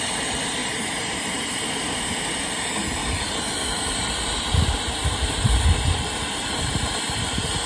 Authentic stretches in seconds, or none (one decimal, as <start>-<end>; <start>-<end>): 0.0-0.6; 2.0-7.7